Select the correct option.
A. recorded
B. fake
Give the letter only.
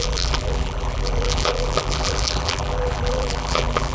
B